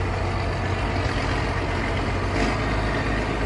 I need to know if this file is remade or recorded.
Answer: recorded